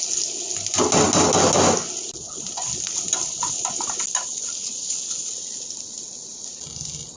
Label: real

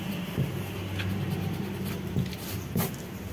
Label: real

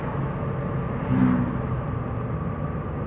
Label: real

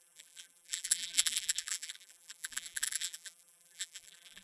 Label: fake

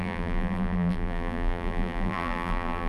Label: fake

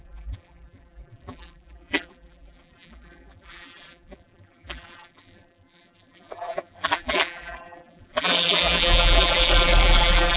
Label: fake